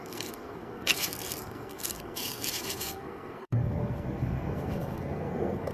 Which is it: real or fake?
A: fake